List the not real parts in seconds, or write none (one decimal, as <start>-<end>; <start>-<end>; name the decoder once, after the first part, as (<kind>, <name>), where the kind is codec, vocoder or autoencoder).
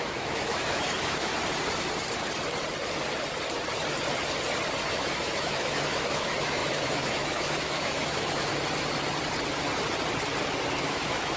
0.0-1.3 (autoencoder, DAC-VAE); 4.9-8.5; 10.8-11.4